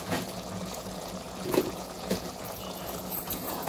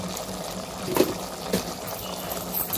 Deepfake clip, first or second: first